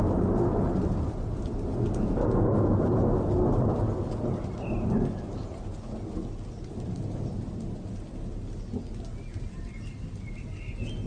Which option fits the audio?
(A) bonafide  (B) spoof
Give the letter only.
A